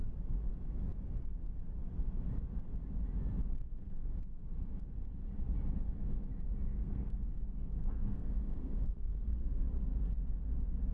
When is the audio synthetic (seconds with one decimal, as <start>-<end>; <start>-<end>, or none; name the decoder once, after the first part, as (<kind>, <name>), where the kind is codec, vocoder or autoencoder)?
3.6-4.2 (codec, SNAC); 6.7-7.2; 7.8-9.6